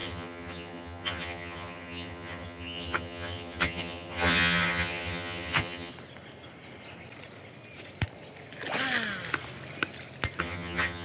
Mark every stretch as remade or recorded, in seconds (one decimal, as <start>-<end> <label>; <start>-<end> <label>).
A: 0.0-5.9 remade; 5.9-10.4 recorded; 10.4-11.0 remade